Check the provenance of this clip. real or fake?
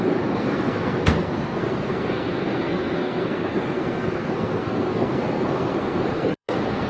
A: fake